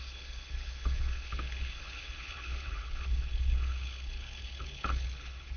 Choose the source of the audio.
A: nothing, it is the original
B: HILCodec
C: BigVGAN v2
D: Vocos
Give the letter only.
B